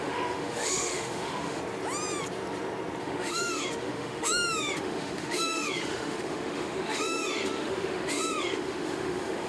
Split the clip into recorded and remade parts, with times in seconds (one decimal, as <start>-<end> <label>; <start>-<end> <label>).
0.0-1.6 remade; 1.6-3.0 recorded; 3.0-9.5 remade